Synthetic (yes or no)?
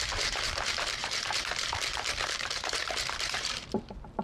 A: yes